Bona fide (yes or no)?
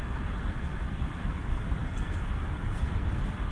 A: no